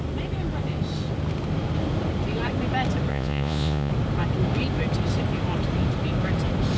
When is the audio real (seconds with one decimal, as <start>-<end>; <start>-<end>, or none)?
0.0-3.1; 3.9-6.8